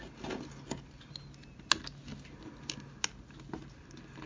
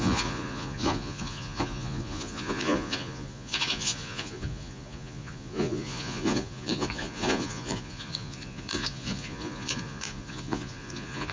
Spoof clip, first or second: second